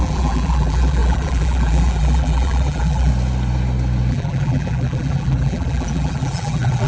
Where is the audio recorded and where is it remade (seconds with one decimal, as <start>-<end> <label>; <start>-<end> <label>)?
0.0-3.1 remade; 3.1-4.1 recorded; 4.1-6.9 remade

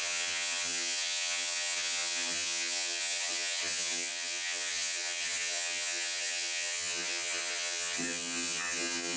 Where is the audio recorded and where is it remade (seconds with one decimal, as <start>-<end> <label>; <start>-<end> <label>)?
0.0-9.2 remade

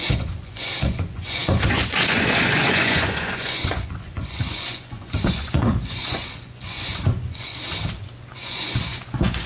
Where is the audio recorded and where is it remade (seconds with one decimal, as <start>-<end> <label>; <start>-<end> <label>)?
0.0-7.5 remade; 7.5-8.2 recorded; 8.2-9.5 remade

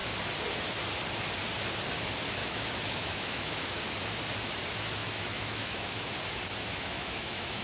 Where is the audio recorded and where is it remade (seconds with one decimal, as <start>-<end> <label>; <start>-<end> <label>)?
0.0-2.4 recorded; 2.4-3.8 remade; 3.8-5.0 recorded; 5.0-6.1 remade; 6.1-6.7 recorded; 6.7-7.6 remade

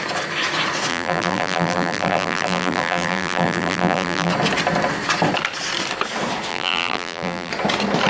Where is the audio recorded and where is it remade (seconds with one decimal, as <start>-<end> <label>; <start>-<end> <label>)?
0.0-0.9 recorded; 0.9-4.3 remade; 4.3-6.5 recorded; 6.5-7.5 remade; 7.5-8.1 recorded

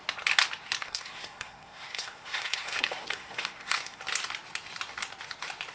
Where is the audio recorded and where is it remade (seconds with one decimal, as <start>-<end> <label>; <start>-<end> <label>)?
0.0-0.8 recorded; 0.8-4.0 remade; 4.0-5.7 recorded

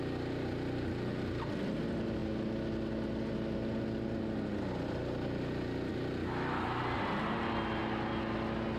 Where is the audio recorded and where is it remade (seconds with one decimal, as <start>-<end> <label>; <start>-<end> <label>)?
0.0-6.2 recorded; 6.2-6.8 remade; 6.8-8.8 recorded

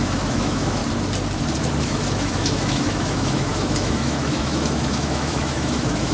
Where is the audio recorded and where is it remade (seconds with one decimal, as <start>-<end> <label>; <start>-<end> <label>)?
0.0-0.8 remade; 0.8-1.8 recorded; 1.8-6.1 remade